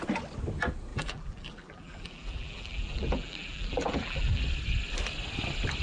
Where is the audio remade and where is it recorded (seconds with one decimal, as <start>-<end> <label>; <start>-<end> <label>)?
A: 0.0-0.9 recorded; 0.9-4.4 remade; 4.4-5.8 recorded